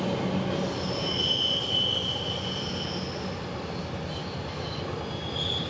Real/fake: real